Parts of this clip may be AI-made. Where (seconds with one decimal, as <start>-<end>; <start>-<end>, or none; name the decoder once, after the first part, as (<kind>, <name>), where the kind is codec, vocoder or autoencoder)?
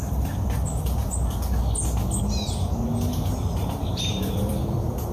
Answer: 0.0-1.0 (vocoder, BigVGAN v2); 3.5-5.1